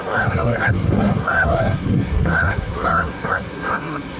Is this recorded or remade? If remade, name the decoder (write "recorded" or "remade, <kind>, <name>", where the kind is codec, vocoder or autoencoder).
remade, codec, SNAC